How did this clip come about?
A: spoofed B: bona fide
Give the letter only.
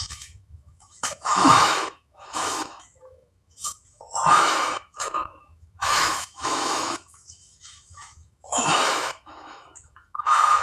A